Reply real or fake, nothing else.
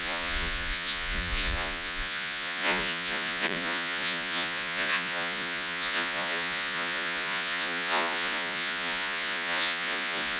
fake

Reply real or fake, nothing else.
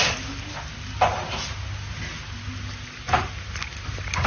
real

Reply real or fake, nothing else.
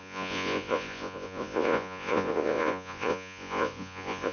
fake